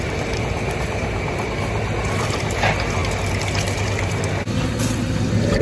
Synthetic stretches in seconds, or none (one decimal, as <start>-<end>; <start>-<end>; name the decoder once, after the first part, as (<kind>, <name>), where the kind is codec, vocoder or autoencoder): none